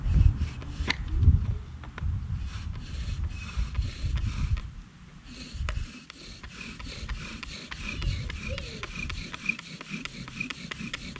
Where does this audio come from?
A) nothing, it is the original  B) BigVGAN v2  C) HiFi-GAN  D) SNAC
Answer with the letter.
A